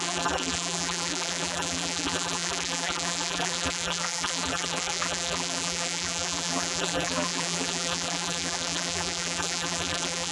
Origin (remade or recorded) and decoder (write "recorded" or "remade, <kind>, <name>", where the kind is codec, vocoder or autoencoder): remade, vocoder, BigVGAN v2